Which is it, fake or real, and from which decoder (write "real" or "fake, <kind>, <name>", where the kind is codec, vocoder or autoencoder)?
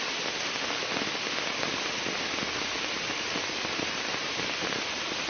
real